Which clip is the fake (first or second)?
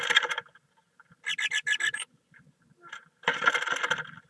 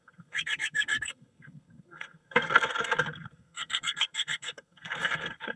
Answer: second